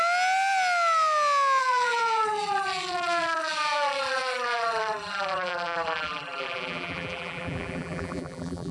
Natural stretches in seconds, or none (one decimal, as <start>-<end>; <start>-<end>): 0.0-1.6